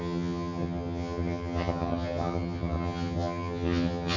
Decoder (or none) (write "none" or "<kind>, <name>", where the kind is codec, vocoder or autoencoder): vocoder, HiFi-GAN